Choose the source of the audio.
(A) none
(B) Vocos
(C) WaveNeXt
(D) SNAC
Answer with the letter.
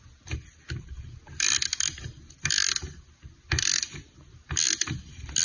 A